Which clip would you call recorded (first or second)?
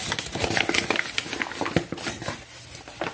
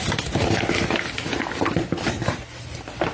first